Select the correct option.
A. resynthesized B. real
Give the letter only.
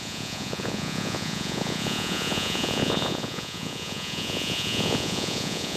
A